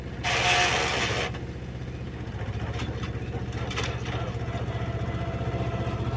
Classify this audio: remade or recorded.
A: recorded